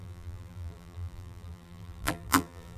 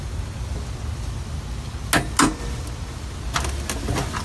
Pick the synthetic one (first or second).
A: first